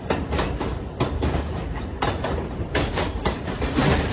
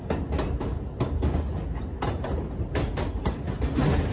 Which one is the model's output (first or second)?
first